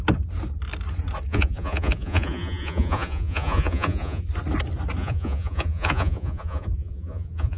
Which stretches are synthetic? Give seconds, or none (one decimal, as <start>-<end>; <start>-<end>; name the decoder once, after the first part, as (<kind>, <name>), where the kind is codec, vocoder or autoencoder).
1.3-4.2 (vocoder, Vocos); 5.0-7.6